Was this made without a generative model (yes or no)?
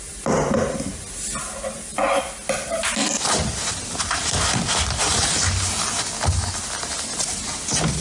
yes